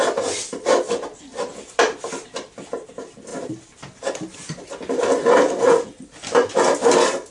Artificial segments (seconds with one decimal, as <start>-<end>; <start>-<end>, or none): 1.3-2.9; 3.3-6.6